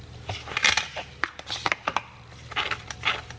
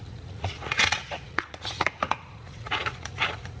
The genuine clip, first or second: first